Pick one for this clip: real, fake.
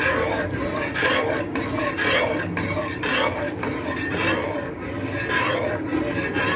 real